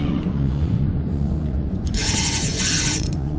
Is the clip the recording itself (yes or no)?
no